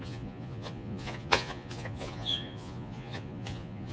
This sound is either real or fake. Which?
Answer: fake